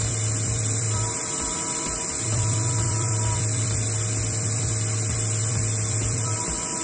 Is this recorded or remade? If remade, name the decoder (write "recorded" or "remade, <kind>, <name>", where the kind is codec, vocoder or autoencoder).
remade, vocoder, BigVGAN v2